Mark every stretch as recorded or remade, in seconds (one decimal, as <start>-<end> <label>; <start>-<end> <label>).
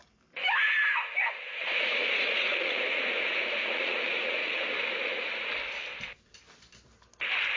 0.0-0.9 recorded; 0.9-5.5 remade; 5.5-7.6 recorded